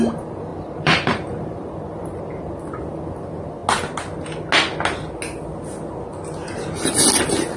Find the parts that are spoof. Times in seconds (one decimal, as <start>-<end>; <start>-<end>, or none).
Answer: 0.5-2.2